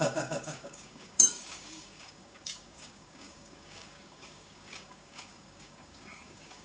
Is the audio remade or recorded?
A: remade